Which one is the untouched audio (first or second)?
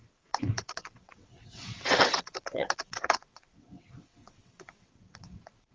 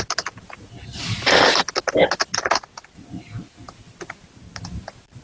second